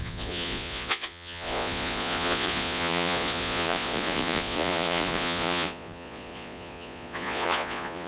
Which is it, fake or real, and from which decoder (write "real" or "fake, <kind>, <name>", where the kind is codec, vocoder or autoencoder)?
fake, vocoder, Vocos